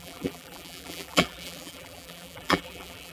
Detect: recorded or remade remade